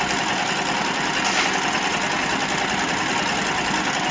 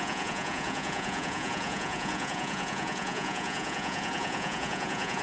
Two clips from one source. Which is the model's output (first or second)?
second